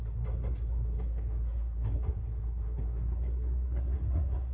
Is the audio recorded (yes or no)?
no